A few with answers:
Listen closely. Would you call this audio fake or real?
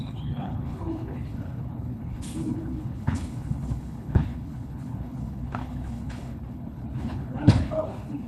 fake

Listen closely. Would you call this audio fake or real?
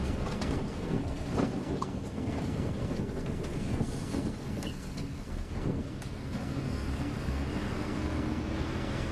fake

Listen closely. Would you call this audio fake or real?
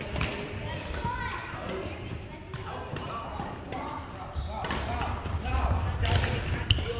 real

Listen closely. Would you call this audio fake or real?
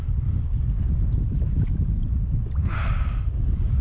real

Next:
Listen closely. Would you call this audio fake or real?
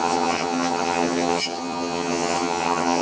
fake